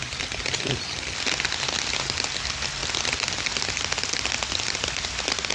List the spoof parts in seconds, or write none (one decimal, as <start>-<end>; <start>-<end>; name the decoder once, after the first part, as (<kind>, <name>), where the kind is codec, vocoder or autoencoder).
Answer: 2.8-3.5 (vocoder, BigVGAN v2)